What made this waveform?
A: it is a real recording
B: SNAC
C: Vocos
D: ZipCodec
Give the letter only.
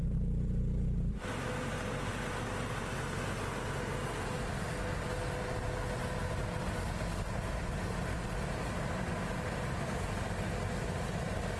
A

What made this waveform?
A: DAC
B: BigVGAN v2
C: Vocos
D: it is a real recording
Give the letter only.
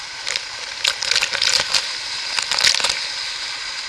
D